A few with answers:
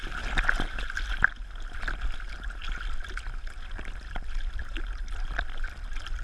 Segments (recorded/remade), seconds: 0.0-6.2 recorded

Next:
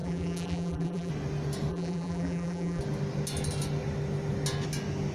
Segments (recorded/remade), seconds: 0.0-1.1 remade; 1.1-1.7 recorded; 1.7-2.8 remade; 2.8-5.1 recorded

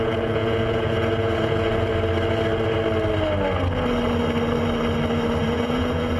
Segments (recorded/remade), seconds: 0.0-1.9 remade; 1.9-5.4 recorded; 5.4-6.2 remade

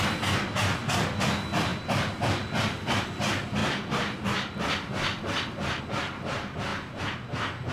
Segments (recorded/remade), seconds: 0.0-7.7 recorded

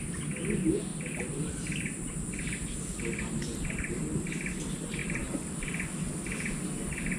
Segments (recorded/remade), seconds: 0.0-0.9 recorded; 0.9-4.2 remade; 4.2-5.0 recorded; 5.0-5.7 remade; 5.7-7.2 recorded

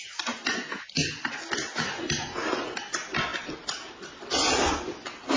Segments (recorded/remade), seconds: 0.0-5.4 recorded

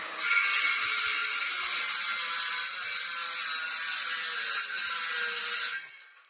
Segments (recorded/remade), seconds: 0.0-6.3 recorded